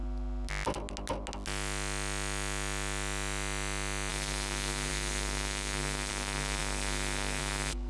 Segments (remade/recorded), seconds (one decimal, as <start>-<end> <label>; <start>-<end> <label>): 0.0-4.1 recorded; 4.1-7.9 remade